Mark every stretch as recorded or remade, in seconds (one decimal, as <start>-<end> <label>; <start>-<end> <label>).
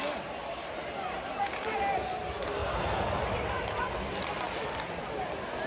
0.0-2.6 recorded; 2.6-3.9 remade; 3.9-5.7 recorded